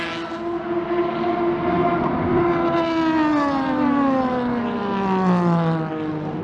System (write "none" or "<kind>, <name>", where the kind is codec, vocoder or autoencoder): none